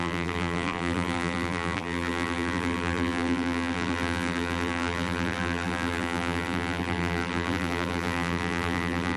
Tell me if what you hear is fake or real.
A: fake